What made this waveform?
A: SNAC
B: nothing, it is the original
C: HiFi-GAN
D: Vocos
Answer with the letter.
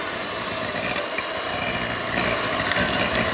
B